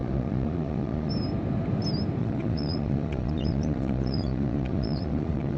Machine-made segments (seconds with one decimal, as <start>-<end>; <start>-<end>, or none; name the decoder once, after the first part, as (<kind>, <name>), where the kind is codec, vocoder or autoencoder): 0.0-1.1 (vocoder, Vocos); 2.2-5.6